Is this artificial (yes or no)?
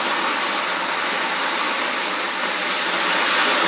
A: no